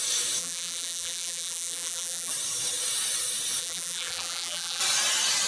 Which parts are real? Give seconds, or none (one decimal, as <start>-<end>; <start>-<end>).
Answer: 0.0-0.4; 2.3-3.6; 4.8-5.5